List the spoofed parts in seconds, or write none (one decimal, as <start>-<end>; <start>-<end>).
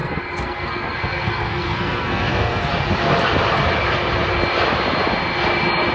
0.0-2.7